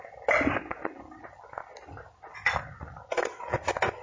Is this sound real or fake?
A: real